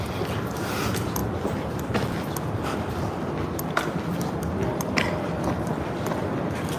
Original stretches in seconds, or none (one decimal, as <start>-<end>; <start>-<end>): 0.0-6.8